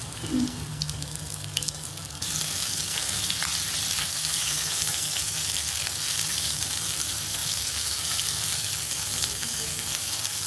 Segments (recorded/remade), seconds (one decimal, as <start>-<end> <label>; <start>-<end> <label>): 0.0-3.4 remade; 3.4-3.9 recorded; 3.9-10.5 remade